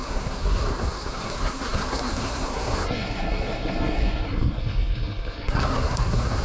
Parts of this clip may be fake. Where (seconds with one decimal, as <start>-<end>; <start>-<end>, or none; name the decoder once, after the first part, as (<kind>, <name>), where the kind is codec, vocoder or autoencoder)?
0.0-6.4 (codec, SNAC)